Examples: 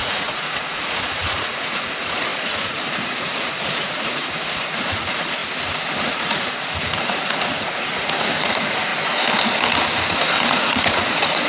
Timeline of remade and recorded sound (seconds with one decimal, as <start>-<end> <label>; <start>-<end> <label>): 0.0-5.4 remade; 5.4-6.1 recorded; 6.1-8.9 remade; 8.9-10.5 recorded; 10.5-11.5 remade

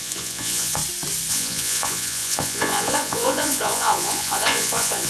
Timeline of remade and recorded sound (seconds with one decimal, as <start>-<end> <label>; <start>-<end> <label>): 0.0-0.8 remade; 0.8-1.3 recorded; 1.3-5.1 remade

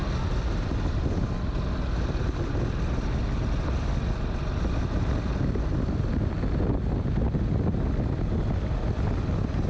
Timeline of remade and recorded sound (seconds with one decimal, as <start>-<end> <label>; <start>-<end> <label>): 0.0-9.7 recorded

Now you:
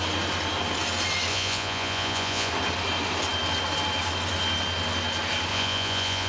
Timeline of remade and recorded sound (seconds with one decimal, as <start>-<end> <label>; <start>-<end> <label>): 0.0-1.3 recorded; 1.3-2.5 remade; 2.5-5.5 recorded; 5.5-6.3 remade

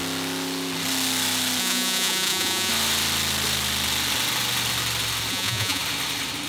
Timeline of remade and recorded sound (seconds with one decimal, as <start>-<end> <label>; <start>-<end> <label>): 0.0-1.6 recorded; 1.6-2.7 remade; 2.7-5.3 recorded; 5.3-5.8 remade; 5.8-6.5 recorded

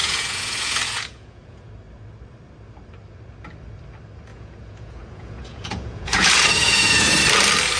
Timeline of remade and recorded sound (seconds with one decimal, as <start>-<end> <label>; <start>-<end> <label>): 0.0-1.7 remade; 1.7-4.3 recorded; 4.3-7.2 remade; 7.2-7.8 recorded

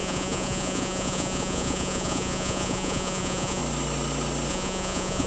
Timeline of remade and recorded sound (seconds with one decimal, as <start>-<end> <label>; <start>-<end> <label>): 0.0-3.6 remade; 3.6-4.5 recorded; 4.5-5.3 remade

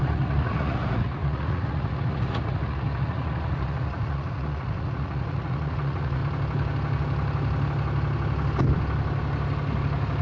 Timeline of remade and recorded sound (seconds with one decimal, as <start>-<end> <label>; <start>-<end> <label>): 0.0-6.2 remade; 6.2-10.2 recorded